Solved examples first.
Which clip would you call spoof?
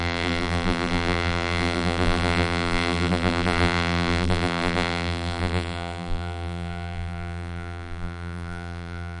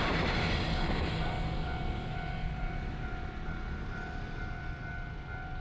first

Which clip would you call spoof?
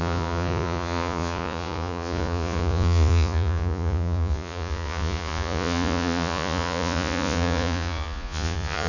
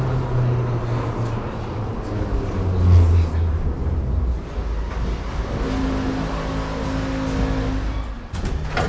first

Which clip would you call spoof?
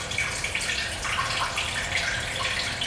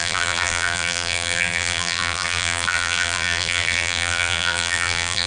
second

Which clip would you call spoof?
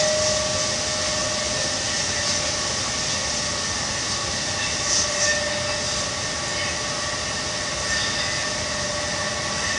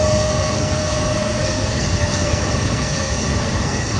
second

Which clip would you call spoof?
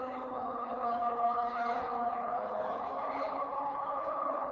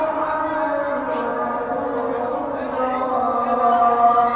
first